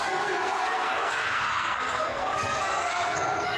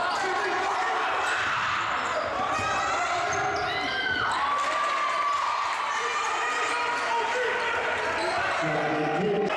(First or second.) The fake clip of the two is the first